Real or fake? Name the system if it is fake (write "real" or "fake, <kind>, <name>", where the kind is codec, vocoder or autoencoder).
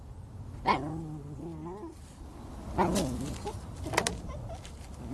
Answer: real